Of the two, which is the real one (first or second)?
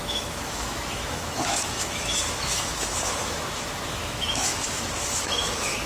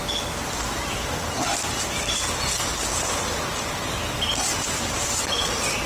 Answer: second